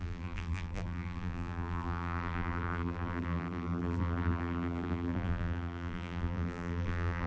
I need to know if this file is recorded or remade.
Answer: remade